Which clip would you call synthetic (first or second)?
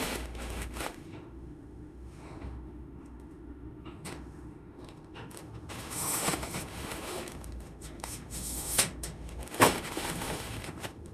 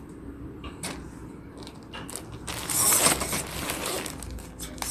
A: first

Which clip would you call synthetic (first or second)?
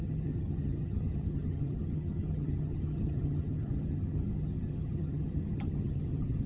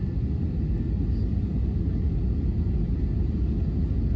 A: first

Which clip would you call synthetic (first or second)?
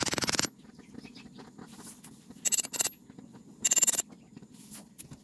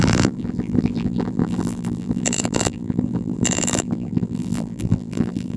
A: second